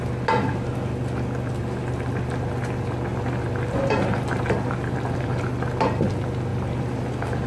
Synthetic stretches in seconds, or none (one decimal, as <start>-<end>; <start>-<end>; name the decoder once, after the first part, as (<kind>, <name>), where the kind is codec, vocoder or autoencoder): 3.1-4.7 (vocoder, BigVGAN v2); 6.5-7.1